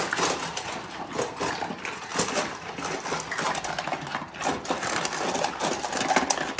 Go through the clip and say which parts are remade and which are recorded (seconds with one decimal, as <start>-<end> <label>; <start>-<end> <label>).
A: 0.0-6.6 recorded